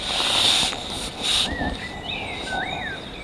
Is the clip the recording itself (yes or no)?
yes